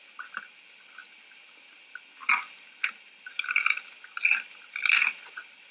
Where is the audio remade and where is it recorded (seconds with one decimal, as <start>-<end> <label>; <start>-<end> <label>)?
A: 0.0-5.7 recorded